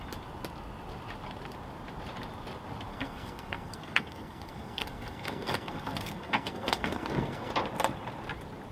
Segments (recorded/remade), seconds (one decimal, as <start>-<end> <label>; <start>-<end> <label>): 0.0-2.9 recorded; 2.9-7.5 remade; 7.5-8.7 recorded